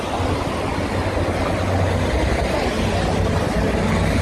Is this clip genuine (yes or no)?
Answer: yes